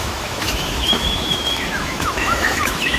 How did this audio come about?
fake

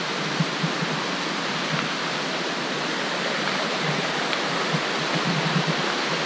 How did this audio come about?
real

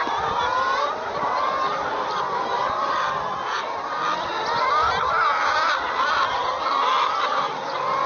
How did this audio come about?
real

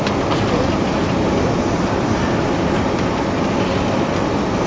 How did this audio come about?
real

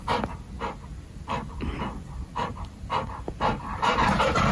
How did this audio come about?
fake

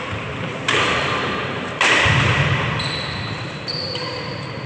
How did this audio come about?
fake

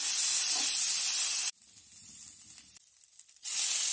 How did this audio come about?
real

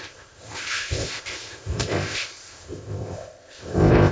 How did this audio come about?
fake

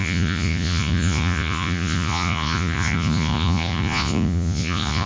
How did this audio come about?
fake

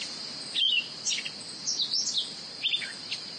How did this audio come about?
real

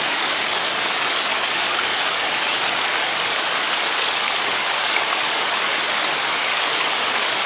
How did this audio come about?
fake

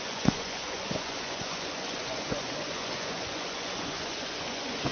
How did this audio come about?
fake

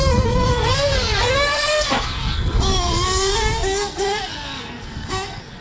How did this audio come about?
fake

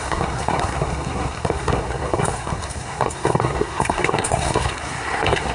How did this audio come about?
fake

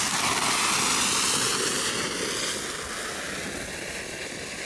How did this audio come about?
real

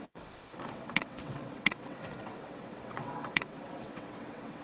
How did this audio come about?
fake